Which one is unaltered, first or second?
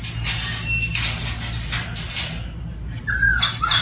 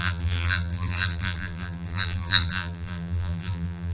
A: first